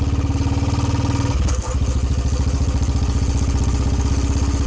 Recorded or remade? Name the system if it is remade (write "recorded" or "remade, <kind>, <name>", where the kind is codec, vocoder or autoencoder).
recorded